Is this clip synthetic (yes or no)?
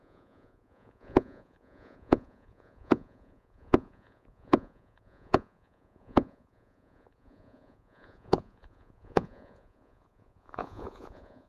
yes